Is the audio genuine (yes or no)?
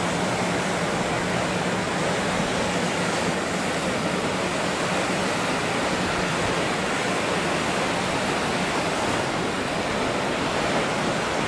yes